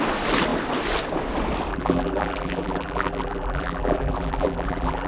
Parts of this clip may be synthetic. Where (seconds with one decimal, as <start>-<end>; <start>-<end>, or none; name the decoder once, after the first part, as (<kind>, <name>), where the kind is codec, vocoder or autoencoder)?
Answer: 1.7-5.1 (vocoder, BigVGAN v2)